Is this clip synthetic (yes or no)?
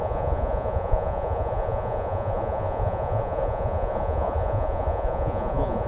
yes